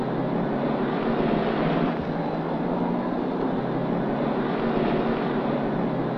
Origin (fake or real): real